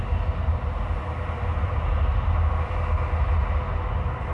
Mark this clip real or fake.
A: real